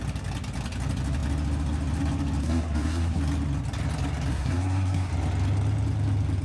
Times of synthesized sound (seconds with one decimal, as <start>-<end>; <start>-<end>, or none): 2.4-3.2; 4.3-5.1